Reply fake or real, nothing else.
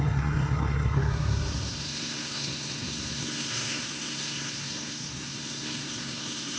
fake